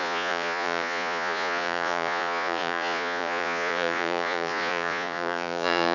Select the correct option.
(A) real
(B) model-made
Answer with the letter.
B